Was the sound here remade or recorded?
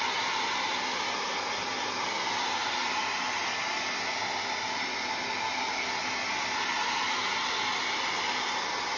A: recorded